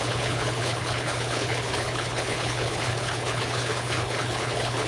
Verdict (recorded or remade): remade